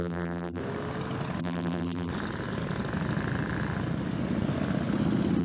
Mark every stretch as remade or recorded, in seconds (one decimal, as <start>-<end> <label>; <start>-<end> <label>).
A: 0.0-0.6 remade; 0.6-1.4 recorded; 1.4-2.1 remade; 2.1-5.4 recorded